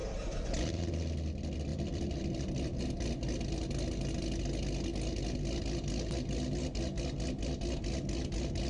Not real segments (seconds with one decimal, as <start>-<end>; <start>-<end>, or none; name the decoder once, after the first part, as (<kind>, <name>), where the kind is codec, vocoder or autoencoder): 0.0-0.9 (vocoder, BigVGAN v2); 1.7-2.8

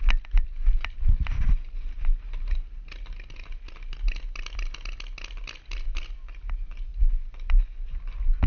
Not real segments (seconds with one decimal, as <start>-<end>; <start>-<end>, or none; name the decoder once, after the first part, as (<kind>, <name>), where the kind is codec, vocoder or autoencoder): 6.9-7.5 (vocoder, BigVGAN v2)

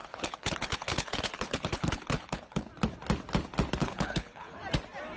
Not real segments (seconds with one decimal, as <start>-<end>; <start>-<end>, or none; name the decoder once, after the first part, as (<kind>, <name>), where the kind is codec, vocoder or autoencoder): 0.0-2.7 (codec, HILCodec); 3.8-4.6

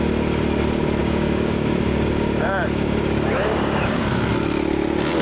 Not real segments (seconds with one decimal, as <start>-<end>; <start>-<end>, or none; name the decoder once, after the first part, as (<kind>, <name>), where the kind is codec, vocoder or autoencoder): 1.0-4.1 (codec, DAC)

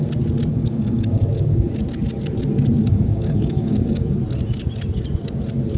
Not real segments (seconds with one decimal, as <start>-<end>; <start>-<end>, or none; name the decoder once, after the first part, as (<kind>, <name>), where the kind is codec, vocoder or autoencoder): 0.5-1.7 (codec, DAC); 2.8-4.2

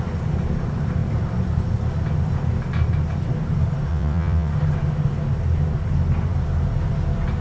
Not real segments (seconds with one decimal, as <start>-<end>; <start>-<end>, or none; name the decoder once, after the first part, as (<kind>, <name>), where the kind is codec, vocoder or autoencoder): 3.9-4.5 (vocoder, WaveNeXt)

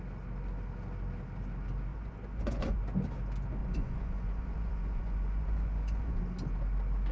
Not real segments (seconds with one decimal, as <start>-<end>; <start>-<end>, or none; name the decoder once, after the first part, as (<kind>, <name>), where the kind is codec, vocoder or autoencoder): 1.9-2.8 (vocoder, Vocos); 3.6-6.2

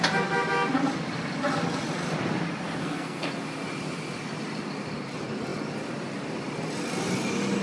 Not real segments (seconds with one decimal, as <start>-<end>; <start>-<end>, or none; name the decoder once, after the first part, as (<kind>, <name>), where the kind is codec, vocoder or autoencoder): 2.8-3.3 (codec, SNAC)